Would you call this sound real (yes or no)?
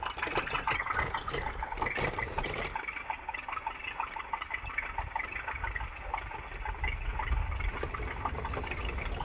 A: yes